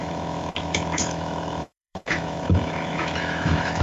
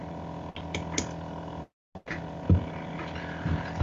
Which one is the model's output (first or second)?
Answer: first